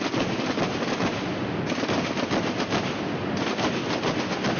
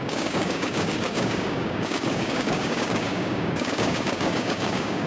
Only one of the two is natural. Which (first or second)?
first